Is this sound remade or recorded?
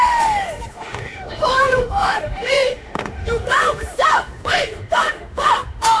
remade